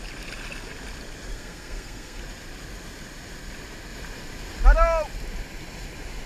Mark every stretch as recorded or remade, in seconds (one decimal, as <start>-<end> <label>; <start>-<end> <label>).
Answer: 0.0-1.3 recorded; 1.3-2.2 remade; 2.2-6.3 recorded